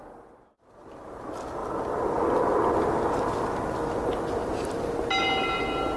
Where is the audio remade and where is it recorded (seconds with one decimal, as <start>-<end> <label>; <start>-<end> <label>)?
0.0-6.0 recorded